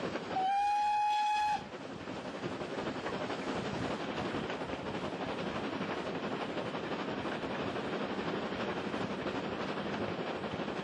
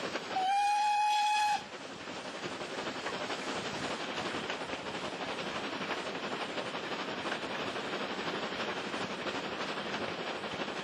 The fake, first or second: second